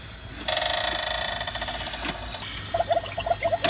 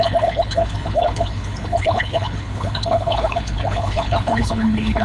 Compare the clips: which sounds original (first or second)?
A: first